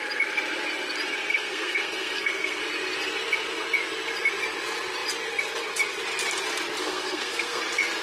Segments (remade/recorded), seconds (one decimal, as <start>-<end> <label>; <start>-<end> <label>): 0.0-1.3 recorded; 1.3-2.6 remade; 2.6-6.8 recorded; 6.8-7.6 remade; 7.6-8.0 recorded